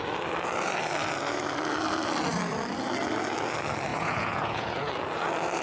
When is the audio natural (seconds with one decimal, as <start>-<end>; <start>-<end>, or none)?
0.0-3.9; 4.9-5.6